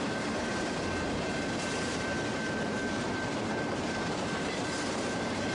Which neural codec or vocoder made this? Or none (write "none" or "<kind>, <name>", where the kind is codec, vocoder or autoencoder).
vocoder, BigVGAN v2